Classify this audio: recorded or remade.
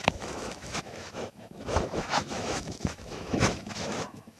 remade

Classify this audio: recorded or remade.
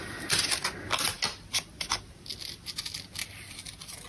recorded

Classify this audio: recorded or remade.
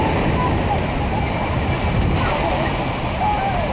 recorded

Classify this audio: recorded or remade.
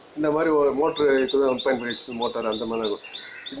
recorded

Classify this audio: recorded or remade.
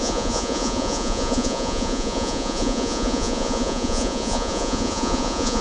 remade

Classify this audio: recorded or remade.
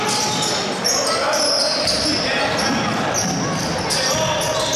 recorded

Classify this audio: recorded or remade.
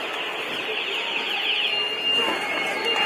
recorded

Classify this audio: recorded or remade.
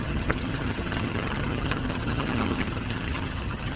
remade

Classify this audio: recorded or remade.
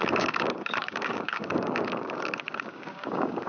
remade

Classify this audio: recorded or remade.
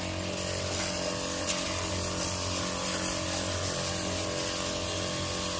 recorded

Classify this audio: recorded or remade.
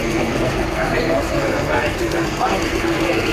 remade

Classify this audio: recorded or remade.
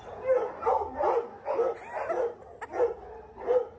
recorded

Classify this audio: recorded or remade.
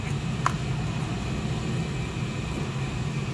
recorded